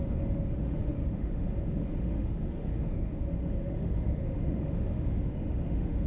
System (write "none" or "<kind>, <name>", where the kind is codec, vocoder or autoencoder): autoencoder, DAC-VAE